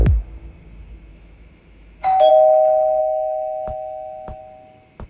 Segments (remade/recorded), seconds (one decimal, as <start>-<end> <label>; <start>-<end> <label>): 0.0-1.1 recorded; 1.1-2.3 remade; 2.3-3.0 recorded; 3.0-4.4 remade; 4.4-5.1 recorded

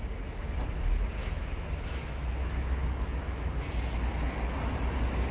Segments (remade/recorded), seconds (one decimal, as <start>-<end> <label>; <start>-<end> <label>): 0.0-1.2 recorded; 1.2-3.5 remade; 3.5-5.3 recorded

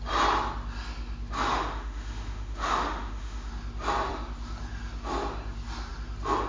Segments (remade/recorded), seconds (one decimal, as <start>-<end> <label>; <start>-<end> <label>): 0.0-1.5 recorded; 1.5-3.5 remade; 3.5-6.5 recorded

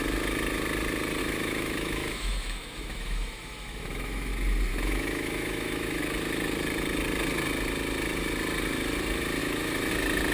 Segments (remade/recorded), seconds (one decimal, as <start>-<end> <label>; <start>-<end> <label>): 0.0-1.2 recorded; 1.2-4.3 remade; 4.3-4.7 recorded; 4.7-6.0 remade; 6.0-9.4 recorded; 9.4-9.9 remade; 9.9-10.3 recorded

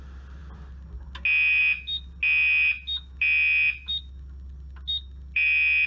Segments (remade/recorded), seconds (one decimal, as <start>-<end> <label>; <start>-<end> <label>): 0.0-5.9 recorded

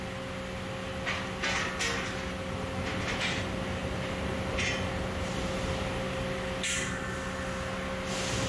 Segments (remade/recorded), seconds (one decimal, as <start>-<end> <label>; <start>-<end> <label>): 0.0-8.5 recorded

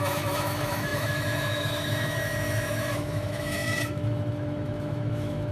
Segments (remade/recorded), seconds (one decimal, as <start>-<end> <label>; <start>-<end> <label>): 0.0-5.5 remade

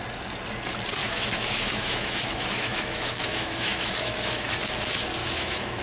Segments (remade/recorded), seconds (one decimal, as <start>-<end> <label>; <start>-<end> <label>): 0.0-1.0 recorded; 1.0-4.5 remade; 4.5-5.2 recorded; 5.2-5.8 remade